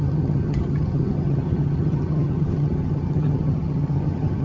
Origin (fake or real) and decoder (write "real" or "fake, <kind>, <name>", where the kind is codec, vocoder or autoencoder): fake, vocoder, HiFi-GAN